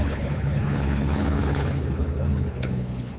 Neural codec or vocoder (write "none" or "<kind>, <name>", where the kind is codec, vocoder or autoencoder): codec, HILCodec